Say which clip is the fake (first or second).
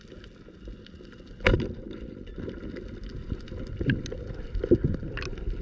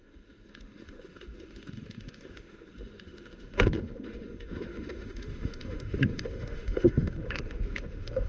second